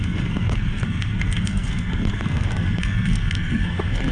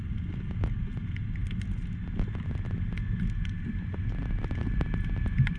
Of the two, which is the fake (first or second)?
first